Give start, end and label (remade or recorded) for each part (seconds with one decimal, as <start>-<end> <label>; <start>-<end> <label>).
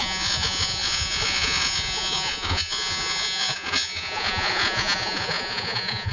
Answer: 0.0-6.1 remade